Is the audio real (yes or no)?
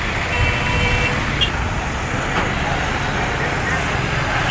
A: yes